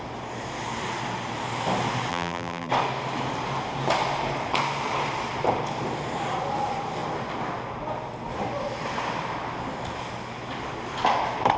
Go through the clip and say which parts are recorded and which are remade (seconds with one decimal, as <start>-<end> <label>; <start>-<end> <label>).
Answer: 0.0-2.1 recorded; 2.1-2.7 remade; 2.7-11.6 recorded